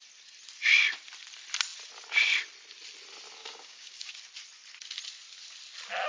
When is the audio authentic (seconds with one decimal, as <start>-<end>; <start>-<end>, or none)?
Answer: 0.0-3.4; 4.1-6.1

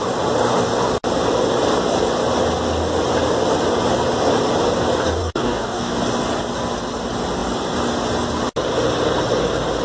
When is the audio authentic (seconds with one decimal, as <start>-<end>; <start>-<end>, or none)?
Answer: 0.0-5.2; 5.9-9.8